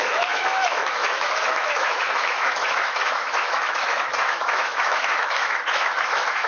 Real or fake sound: fake